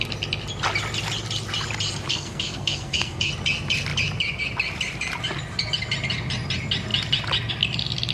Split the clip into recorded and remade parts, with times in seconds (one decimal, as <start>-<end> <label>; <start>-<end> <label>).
0.0-2.1 recorded; 2.1-3.3 remade; 3.3-8.1 recorded